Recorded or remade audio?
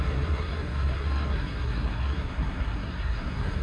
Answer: remade